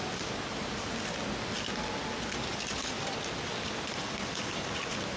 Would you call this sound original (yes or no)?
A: yes